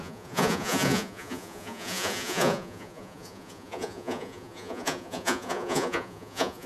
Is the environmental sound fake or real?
fake